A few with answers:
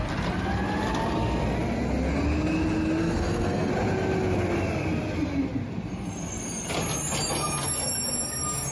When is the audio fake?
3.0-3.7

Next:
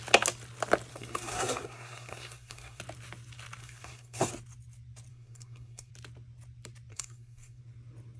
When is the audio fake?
0.9-2.8; 3.6-4.3; 5.1-5.9; 6.9-7.6

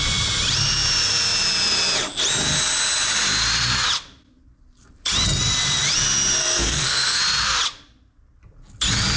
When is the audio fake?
6.4-7.2

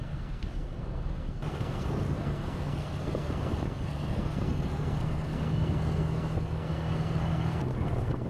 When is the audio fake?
0.0-8.3

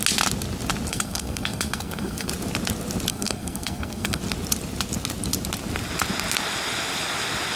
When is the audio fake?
0.9-2.3; 3.1-4.2